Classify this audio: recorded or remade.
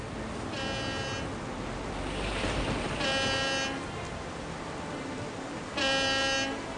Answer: recorded